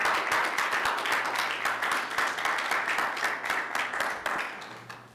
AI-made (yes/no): no